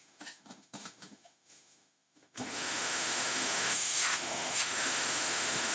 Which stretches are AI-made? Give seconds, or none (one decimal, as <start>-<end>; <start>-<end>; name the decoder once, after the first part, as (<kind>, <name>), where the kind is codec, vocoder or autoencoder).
0.0-5.7 (autoencoder, DAC-VAE)